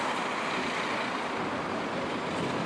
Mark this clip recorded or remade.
recorded